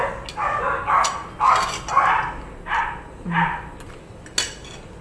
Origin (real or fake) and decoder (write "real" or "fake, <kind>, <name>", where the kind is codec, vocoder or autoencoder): real